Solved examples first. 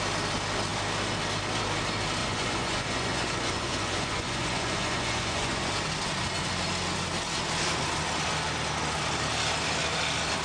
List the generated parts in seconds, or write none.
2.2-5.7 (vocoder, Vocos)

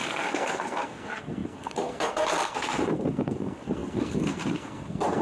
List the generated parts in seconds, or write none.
0.0-5.2 (codec, SNAC)

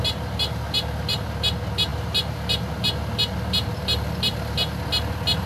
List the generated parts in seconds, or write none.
none

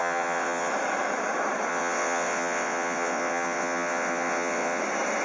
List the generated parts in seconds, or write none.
0.0-0.7 (vocoder, WaveNeXt); 1.7-4.8

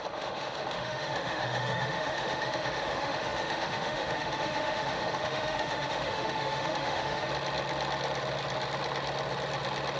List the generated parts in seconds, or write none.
0.0-7.3 (autoencoder, DAC-VAE)

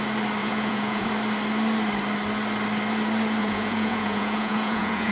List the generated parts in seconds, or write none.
0.4-1.1 (vocoder, Vocos); 3.4-5.1

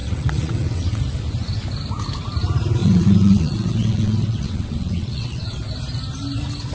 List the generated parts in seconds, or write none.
0.0-1.0 (vocoder, WaveNeXt); 2.8-5.7